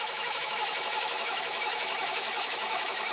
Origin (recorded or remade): remade